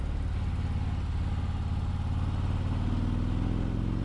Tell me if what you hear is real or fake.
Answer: real